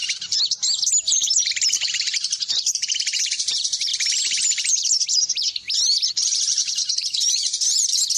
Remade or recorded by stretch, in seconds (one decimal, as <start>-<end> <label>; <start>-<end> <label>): 0.0-1.1 recorded; 1.1-8.2 remade